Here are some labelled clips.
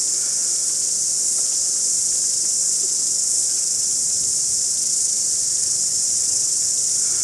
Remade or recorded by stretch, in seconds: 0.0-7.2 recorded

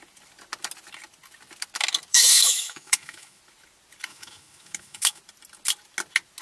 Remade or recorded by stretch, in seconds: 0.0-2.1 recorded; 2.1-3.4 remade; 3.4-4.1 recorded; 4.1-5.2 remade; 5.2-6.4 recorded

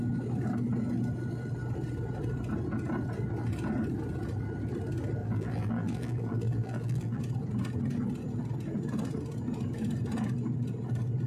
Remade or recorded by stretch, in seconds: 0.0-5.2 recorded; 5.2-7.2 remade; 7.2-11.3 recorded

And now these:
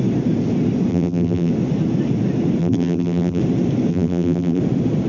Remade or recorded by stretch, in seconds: 0.0-0.9 recorded; 0.9-1.5 remade; 1.5-2.6 recorded; 2.6-3.4 remade; 3.4-3.9 recorded; 3.9-4.6 remade; 4.6-5.1 recorded